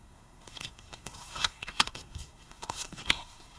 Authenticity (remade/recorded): remade